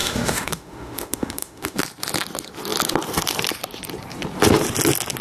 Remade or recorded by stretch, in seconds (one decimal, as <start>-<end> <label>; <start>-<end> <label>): 0.0-1.8 remade; 1.8-5.2 recorded